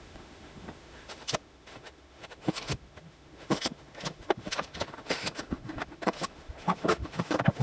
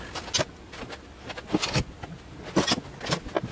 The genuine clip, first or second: second